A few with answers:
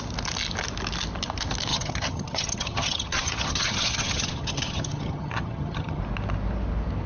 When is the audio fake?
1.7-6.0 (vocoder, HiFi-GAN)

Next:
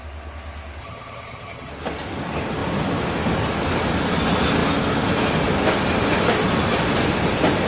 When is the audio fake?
0.8-1.7 (vocoder, HiFi-GAN)

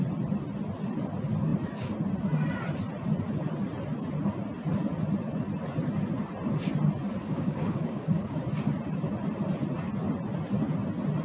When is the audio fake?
7.2-8.4 (codec, DAC)

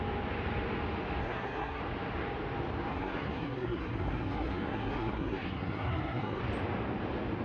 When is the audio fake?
1.2-1.8 (codec, SNAC); 2.9-6.4